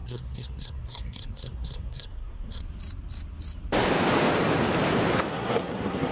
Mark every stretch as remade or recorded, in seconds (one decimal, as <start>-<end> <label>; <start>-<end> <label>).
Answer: 0.0-2.6 remade; 2.6-5.3 recorded; 5.3-6.1 remade